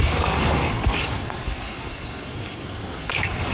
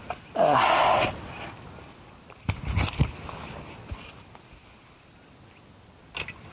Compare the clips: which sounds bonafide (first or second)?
second